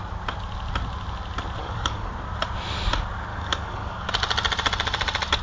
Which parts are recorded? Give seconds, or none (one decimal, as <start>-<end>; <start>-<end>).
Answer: 0.0-1.6; 2.1-3.3; 4.1-5.4

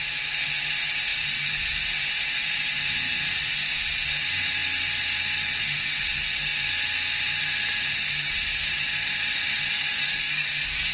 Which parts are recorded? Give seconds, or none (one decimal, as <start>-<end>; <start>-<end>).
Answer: 0.0-9.7

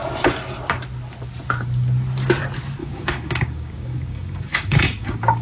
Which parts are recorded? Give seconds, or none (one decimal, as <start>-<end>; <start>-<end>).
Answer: 0.0-2.8

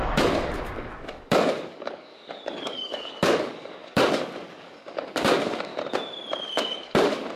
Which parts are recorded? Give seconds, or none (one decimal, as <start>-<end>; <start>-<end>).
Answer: 5.7-6.6

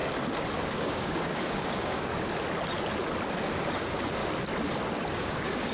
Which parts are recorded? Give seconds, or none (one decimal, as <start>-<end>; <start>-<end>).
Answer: 0.0-0.7; 2.1-3.8; 4.2-5.1

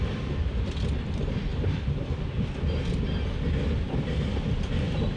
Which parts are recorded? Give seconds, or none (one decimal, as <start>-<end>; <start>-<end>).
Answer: 0.0-5.2

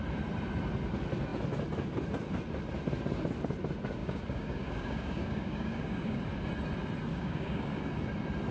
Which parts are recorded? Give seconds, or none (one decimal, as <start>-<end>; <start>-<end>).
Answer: 0.0-4.0; 6.2-7.1; 7.8-8.5